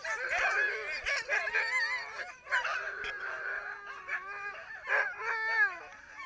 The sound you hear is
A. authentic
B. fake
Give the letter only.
A